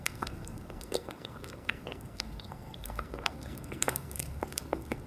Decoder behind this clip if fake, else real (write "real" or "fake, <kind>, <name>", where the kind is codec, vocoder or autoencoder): fake, codec, SNAC